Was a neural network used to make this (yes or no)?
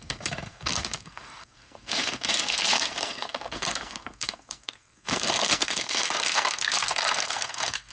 yes